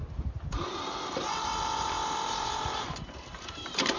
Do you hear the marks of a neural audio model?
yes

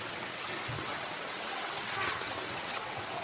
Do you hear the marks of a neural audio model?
yes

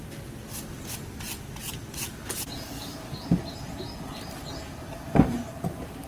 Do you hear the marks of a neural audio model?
no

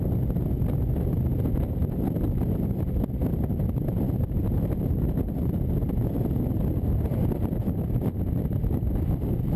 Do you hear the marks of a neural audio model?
no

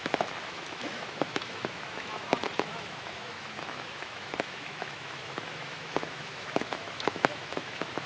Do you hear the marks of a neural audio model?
yes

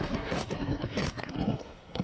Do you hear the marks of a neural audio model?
yes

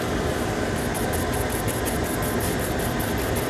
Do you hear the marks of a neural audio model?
no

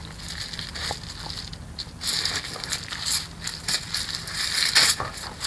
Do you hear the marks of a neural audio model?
no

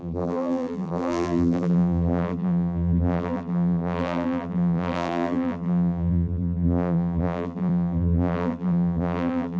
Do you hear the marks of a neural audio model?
yes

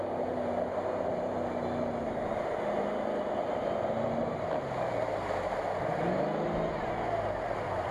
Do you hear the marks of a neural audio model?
no